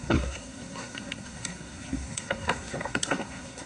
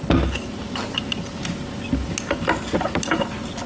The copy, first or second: first